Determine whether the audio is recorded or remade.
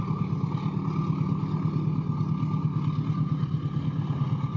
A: recorded